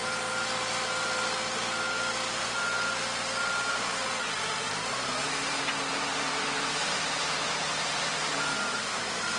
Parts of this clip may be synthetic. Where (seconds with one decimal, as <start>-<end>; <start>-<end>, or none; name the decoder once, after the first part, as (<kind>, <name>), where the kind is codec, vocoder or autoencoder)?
4.6-9.4 (vocoder, BigVGAN v2)